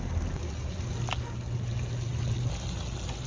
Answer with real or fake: real